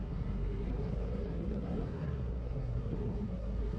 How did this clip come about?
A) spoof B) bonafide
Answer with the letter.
A